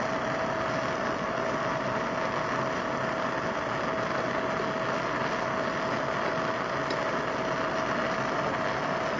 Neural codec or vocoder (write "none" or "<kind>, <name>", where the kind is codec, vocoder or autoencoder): none